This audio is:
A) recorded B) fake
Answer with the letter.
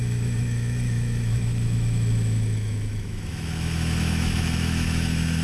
B